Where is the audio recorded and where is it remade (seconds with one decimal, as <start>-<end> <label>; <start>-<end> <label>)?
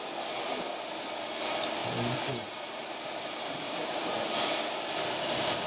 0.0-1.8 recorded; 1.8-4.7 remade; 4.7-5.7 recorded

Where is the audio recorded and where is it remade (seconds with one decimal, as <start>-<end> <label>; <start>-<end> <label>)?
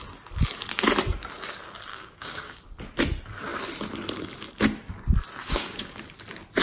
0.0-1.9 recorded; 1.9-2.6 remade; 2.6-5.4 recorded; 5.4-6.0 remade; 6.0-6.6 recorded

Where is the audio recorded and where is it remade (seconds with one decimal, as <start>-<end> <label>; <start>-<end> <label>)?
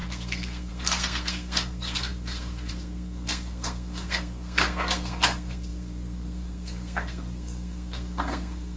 0.0-8.8 remade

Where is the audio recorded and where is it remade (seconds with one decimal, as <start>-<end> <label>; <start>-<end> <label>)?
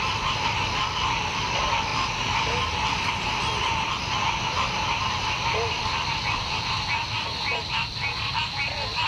0.0-9.1 recorded